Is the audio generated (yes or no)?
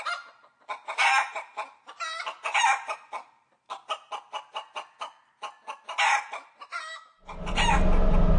no